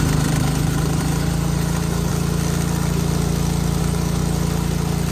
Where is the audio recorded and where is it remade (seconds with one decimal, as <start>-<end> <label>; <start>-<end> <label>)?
0.0-2.1 remade; 2.1-3.8 recorded; 3.8-4.2 remade; 4.2-5.1 recorded